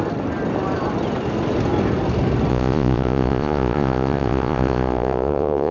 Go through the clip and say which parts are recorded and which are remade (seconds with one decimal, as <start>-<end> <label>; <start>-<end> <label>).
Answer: 0.0-2.5 recorded; 2.5-5.7 remade